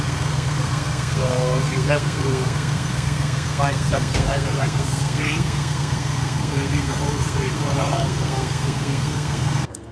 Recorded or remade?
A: remade